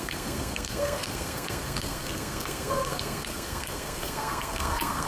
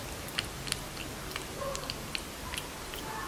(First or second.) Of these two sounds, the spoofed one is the first